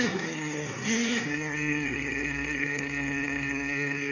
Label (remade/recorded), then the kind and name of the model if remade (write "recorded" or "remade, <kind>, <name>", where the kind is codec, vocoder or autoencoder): remade, codec, SNAC